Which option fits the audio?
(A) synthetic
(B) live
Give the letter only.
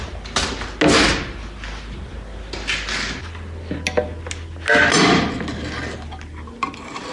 B